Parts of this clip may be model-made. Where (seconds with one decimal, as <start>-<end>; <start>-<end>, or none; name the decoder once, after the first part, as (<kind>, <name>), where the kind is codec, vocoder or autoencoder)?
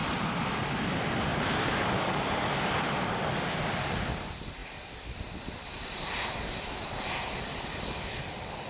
0.8-1.3 (vocoder, BigVGAN v2); 1.8-8.7